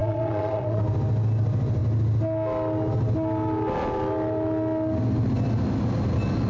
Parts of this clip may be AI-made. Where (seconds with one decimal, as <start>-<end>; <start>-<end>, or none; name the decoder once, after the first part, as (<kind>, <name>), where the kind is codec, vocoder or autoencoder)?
0.0-0.8 (vocoder, Vocos)